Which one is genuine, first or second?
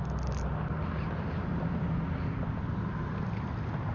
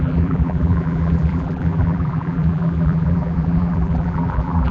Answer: first